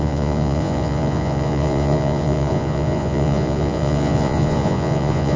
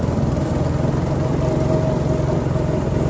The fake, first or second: first